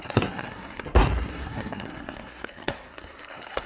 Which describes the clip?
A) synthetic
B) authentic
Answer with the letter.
A